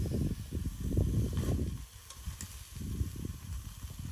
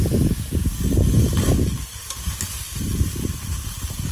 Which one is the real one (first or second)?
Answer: first